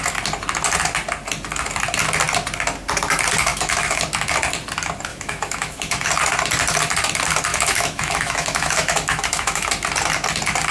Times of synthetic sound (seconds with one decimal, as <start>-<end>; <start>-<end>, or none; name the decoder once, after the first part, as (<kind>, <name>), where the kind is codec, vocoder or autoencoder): 3.5-4.0 (autoencoder, DAC-VAE); 5.1-6.1; 7.5-9.7